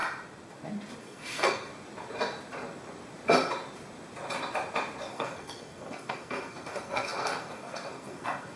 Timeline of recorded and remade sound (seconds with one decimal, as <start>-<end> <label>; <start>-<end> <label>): 0.0-1.0 recorded; 1.0-1.7 remade; 1.7-5.1 recorded; 5.1-8.6 remade